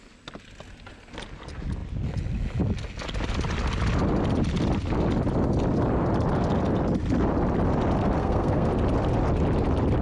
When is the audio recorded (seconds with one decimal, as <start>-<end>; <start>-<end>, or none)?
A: 0.0-8.2; 8.7-10.0